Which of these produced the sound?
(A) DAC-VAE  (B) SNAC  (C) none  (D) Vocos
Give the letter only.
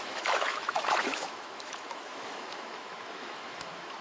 A